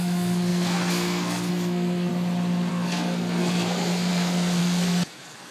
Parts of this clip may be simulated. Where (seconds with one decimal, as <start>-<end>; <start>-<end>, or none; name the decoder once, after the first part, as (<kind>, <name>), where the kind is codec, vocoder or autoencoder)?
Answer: 0.0-2.1 (codec, SNAC); 2.7-5.5